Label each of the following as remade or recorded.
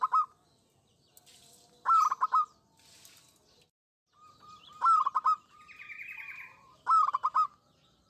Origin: recorded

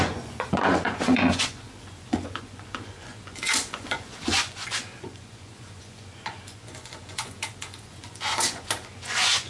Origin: remade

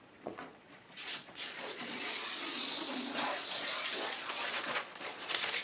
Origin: remade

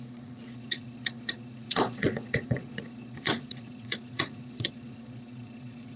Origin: remade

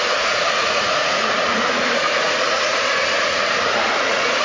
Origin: remade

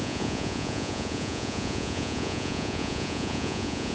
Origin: remade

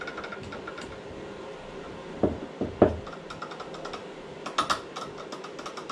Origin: recorded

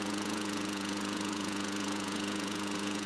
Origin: remade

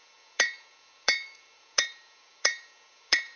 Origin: remade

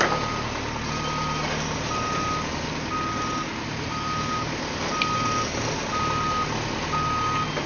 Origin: recorded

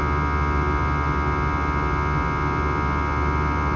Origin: recorded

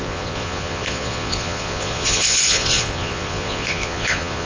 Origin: remade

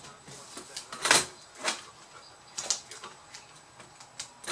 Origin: recorded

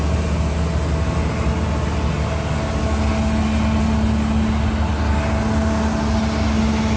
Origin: recorded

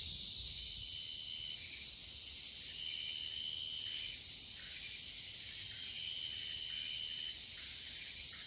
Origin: recorded